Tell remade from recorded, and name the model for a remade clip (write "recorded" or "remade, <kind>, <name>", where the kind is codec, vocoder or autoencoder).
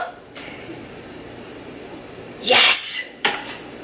remade, vocoder, BigVGAN v2